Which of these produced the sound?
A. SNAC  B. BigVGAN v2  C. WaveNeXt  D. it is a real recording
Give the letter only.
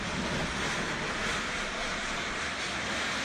D